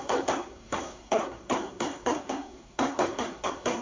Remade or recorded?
remade